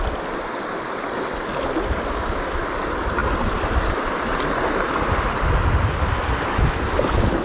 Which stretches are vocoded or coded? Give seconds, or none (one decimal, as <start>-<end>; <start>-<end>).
none